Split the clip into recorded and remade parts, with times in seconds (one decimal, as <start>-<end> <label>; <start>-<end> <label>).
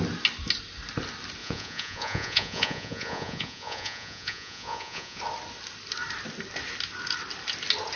0.0-1.4 recorded; 1.4-5.2 remade; 5.2-8.0 recorded